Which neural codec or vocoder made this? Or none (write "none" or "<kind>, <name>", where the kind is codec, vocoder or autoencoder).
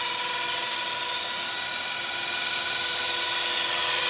none